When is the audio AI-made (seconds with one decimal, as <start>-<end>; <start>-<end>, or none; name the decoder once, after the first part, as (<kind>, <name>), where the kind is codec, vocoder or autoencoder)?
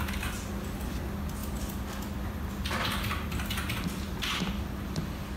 1.4-4.6 (vocoder, BigVGAN v2)